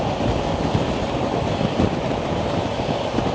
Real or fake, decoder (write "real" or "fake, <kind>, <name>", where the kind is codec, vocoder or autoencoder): real